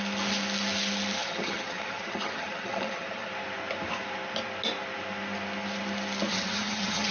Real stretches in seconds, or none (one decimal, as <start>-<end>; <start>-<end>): 0.0-1.2; 3.3-6.3